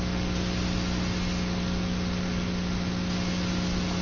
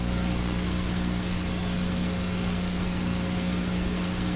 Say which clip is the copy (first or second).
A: second